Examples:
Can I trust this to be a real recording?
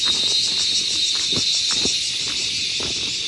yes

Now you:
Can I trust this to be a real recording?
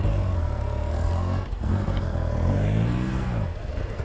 no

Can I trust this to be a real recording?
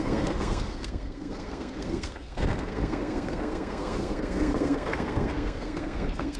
no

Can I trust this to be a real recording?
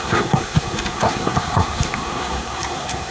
no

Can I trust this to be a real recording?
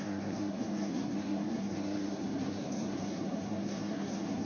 no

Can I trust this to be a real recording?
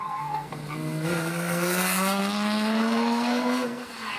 no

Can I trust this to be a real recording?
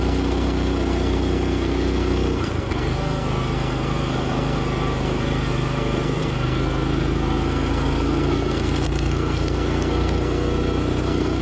no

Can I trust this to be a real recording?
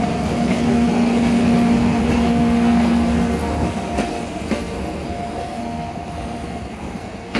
no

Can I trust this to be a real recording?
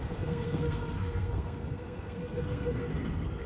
no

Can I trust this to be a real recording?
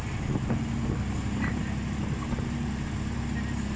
yes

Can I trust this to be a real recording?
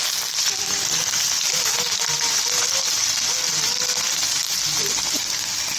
yes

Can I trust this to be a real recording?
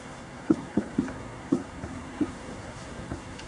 no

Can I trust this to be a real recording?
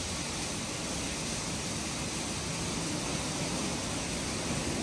yes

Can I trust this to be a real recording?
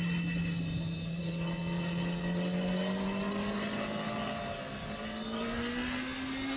yes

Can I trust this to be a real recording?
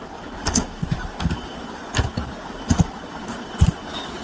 yes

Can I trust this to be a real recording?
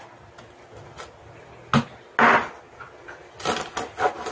yes